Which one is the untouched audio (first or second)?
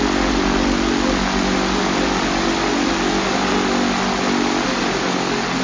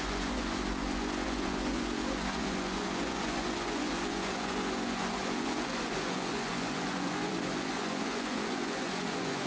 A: first